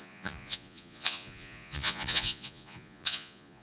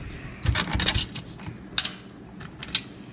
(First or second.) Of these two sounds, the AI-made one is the first